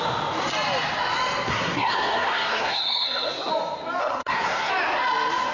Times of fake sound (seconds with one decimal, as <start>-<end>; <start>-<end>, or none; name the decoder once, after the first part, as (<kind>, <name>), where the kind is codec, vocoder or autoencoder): 1.5-3.5 (codec, SNAC); 4.0-4.7